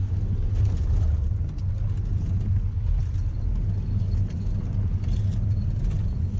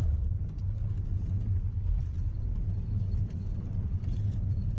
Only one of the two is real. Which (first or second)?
first